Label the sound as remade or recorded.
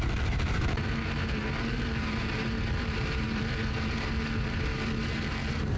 remade